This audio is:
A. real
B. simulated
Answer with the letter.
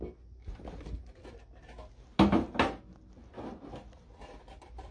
A